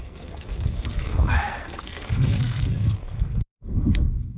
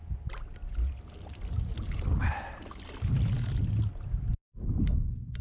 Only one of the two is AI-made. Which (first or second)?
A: first